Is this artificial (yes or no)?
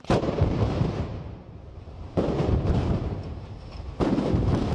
yes